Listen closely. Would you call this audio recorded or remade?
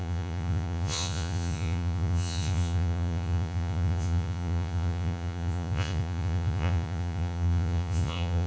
remade